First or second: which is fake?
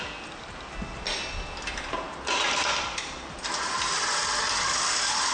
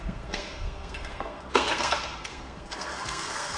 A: second